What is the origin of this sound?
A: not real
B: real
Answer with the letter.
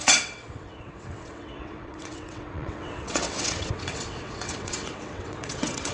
A